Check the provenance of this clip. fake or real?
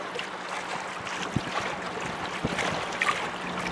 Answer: real